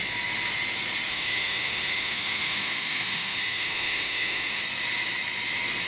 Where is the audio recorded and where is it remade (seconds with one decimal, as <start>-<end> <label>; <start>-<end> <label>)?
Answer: 0.0-1.1 recorded; 1.1-4.6 remade; 4.6-5.9 recorded